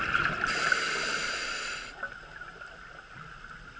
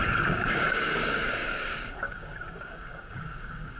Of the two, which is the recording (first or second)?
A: first